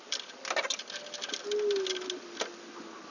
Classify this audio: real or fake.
real